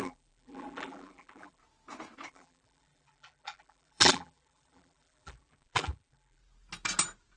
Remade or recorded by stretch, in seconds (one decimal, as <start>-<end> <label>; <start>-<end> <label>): 0.0-1.6 remade; 1.6-2.3 recorded; 2.3-6.4 remade; 6.4-7.4 recorded